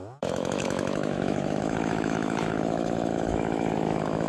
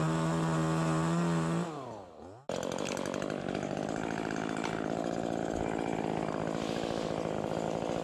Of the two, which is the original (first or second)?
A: second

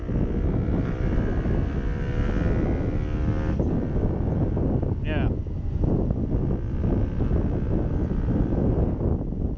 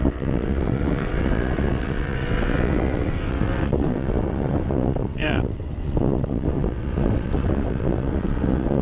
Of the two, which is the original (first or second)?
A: first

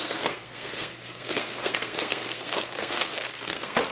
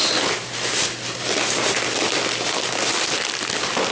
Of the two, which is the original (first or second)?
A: second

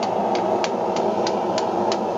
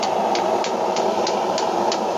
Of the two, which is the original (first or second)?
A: first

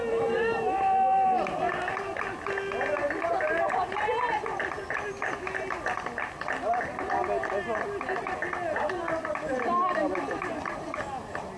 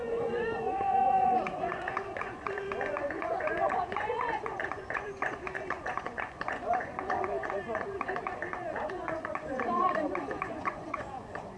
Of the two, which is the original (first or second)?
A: first